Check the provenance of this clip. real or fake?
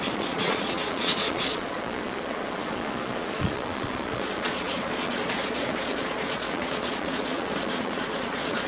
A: fake